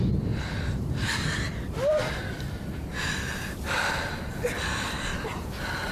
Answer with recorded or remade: remade